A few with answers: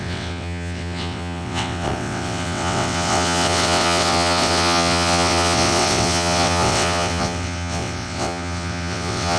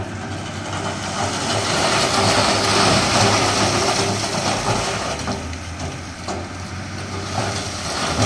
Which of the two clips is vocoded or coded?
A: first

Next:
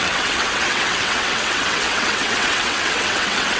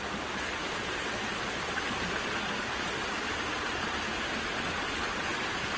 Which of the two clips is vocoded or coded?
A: first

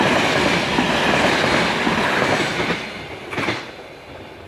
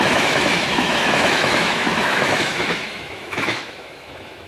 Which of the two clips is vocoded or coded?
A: second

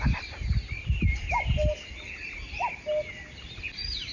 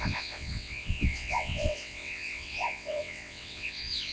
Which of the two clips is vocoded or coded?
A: second